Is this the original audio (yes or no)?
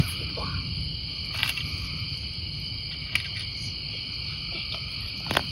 yes